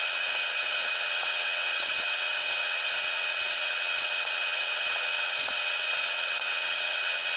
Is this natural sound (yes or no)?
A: no